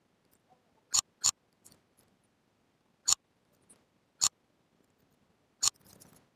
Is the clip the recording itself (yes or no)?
yes